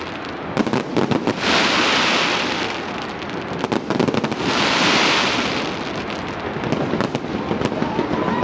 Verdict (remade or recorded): recorded